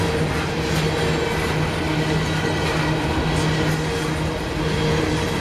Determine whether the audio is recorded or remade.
recorded